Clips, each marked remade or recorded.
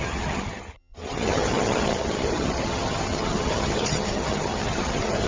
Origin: remade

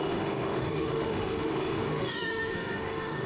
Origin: remade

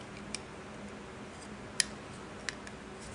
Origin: recorded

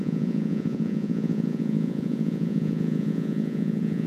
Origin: remade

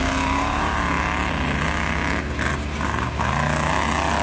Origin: recorded